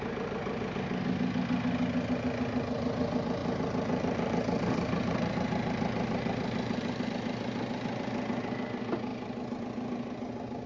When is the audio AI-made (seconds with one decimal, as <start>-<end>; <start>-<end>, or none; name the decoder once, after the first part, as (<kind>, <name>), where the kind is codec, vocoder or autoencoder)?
3.4-7.1 (vocoder, BigVGAN v2)